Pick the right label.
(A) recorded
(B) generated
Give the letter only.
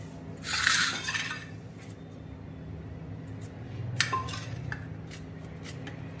A